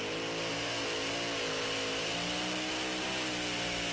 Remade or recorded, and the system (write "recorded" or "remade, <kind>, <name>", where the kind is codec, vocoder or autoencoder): recorded